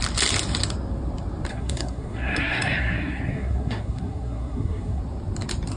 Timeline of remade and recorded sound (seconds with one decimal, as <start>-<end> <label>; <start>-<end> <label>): 0.0-1.5 recorded; 1.5-5.0 remade; 5.0-5.8 recorded